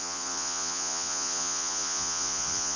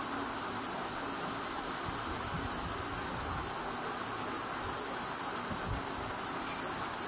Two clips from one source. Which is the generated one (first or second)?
first